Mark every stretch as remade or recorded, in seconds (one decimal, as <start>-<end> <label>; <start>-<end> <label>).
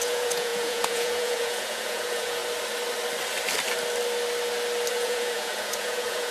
0.0-2.4 remade; 2.4-4.9 recorded; 4.9-6.3 remade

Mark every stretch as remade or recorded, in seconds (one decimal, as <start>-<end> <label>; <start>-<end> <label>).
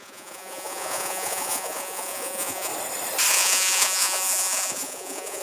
0.0-2.7 remade; 2.7-3.3 recorded; 3.3-5.4 remade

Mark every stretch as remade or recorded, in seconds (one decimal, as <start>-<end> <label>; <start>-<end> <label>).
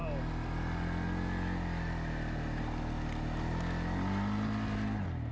0.0-5.3 recorded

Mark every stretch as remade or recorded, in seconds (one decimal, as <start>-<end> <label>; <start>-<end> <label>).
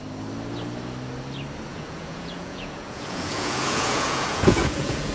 0.0-1.7 recorded; 1.7-5.1 remade